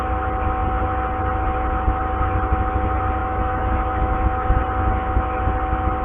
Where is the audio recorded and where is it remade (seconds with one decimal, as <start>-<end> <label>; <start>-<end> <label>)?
0.0-3.2 recorded; 3.2-4.6 remade; 4.6-6.0 recorded